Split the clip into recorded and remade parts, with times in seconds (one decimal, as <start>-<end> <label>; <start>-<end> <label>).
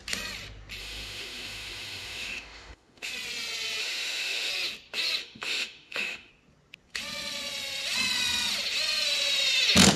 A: 0.0-0.8 recorded; 0.8-3.1 remade; 3.1-3.8 recorded; 3.8-4.5 remade; 4.5-5.2 recorded; 5.2-6.3 remade; 6.3-10.0 recorded